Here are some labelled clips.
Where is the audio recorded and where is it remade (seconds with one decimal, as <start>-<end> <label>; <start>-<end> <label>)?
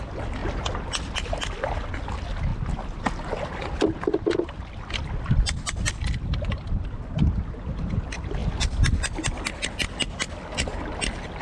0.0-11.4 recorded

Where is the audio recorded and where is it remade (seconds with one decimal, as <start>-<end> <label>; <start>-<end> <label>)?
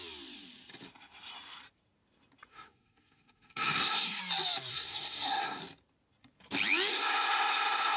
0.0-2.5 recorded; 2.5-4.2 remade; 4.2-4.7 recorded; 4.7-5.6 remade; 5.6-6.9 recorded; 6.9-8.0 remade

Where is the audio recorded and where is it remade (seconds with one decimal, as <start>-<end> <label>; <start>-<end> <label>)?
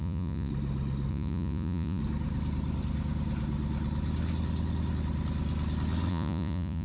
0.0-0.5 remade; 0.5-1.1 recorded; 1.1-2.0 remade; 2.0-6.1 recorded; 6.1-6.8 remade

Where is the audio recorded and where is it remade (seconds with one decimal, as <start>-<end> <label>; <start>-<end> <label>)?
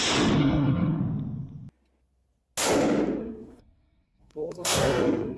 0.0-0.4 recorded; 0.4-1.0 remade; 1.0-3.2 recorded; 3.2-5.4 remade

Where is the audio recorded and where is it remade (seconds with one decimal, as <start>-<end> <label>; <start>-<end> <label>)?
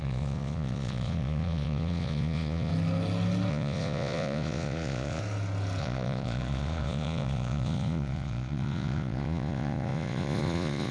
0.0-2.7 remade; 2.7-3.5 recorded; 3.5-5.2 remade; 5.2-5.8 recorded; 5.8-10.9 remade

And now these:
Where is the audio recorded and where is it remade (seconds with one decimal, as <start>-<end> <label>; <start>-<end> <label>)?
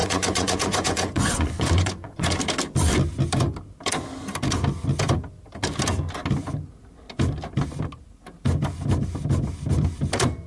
0.0-2.4 remade; 2.4-10.5 recorded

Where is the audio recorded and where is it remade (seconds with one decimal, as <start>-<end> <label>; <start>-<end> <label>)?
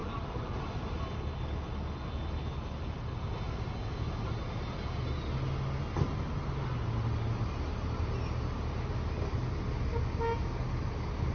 0.0-11.3 recorded